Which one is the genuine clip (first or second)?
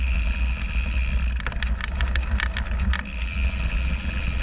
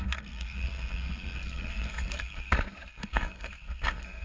first